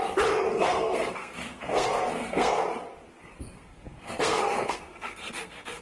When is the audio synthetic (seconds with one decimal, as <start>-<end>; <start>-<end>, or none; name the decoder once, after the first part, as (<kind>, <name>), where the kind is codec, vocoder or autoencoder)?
0.5-2.6 (codec, SNAC); 3.3-5.8